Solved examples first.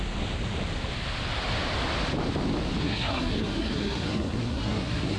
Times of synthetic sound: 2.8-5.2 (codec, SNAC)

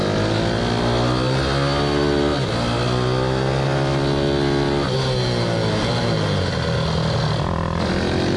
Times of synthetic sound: none

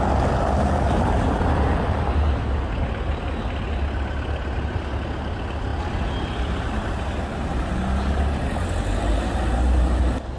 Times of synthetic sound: none

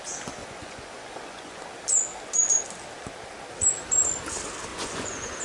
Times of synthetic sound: 0.4-1.6 (vocoder, Vocos); 4.7-5.4